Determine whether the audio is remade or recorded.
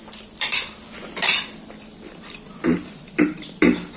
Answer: remade